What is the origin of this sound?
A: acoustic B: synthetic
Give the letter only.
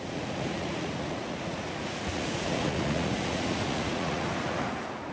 B